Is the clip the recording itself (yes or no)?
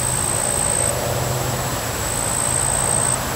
yes